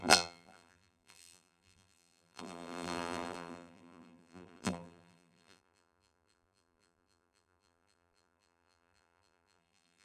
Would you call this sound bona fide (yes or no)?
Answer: no